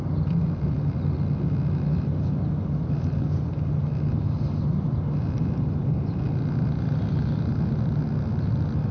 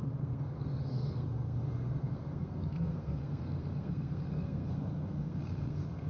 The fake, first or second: second